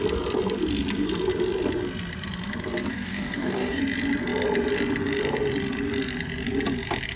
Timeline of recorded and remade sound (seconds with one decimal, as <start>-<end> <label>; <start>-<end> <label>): 0.0-2.9 recorded; 2.9-3.8 remade; 3.8-7.2 recorded